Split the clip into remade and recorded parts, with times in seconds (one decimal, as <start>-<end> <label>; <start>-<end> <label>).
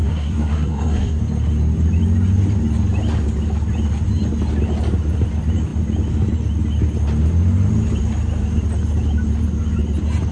0.0-1.2 remade; 1.2-10.3 recorded